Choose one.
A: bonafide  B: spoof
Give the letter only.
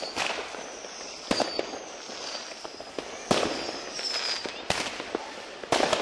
A